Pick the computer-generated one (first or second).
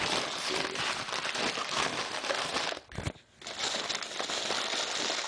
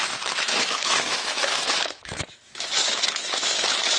second